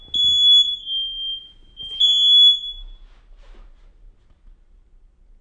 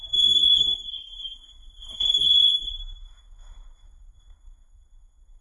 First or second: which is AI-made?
second